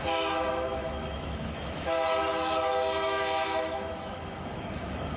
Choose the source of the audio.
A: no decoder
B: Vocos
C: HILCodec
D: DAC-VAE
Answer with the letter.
D